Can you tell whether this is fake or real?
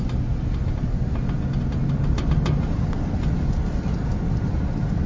real